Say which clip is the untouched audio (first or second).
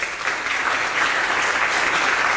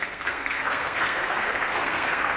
first